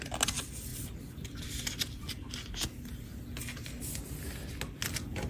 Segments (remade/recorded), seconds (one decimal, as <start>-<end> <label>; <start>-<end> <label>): 0.0-5.3 recorded